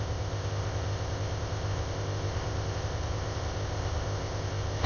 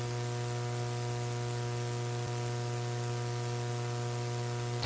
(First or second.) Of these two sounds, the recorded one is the second